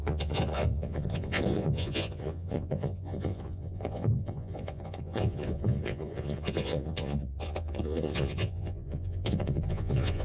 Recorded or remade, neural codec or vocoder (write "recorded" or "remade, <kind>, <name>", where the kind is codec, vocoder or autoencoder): remade, vocoder, Vocos